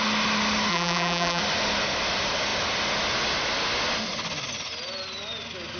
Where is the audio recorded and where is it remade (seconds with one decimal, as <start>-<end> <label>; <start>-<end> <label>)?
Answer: 0.0-0.7 recorded; 0.7-1.4 remade; 1.4-5.8 recorded